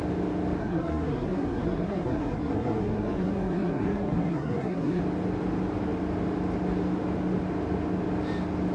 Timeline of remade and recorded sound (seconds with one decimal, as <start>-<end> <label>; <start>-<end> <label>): 0.0-0.6 recorded; 0.6-5.0 remade; 5.0-8.7 recorded